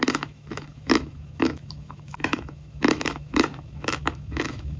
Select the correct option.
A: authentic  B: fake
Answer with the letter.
B